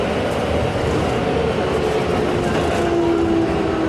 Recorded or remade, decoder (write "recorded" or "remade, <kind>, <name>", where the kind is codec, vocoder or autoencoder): recorded